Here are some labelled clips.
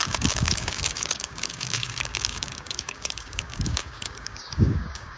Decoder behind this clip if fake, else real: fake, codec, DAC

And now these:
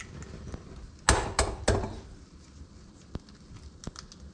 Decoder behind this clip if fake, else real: real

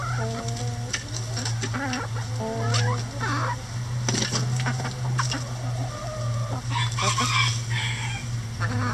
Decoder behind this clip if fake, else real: real